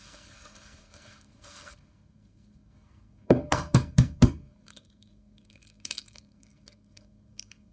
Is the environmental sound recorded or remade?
remade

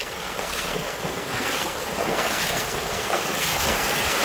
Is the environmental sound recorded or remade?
remade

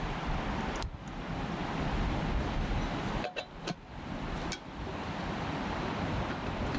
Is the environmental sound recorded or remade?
recorded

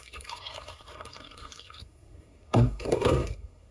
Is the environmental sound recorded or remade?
remade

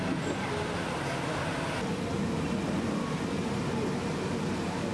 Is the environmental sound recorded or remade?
recorded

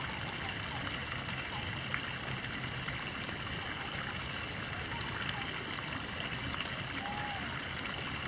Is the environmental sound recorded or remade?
recorded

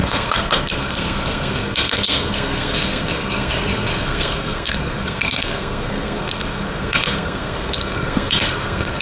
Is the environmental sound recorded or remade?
remade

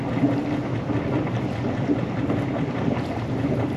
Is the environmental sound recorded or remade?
recorded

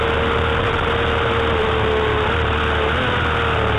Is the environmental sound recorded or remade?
recorded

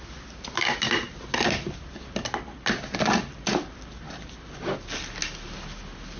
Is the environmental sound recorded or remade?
recorded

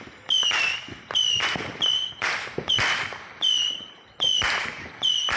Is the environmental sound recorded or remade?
recorded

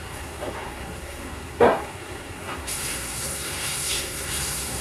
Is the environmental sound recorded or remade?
remade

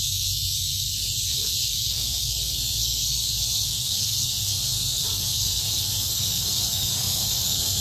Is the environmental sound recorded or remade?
remade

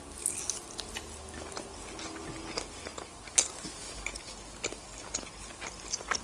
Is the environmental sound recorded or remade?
recorded